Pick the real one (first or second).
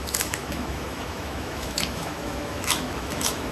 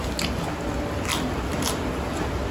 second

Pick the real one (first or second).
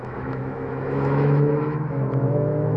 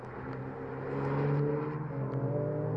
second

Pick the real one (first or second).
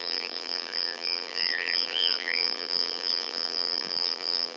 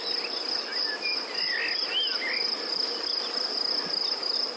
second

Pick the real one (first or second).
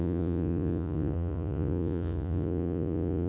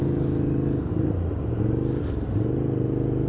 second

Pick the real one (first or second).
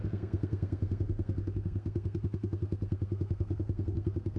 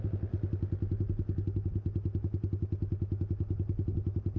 second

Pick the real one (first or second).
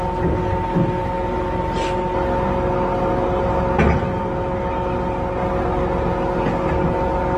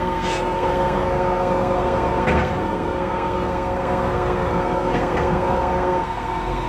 first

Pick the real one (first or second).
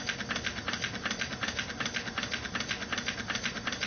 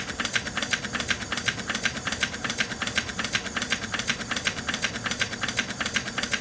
first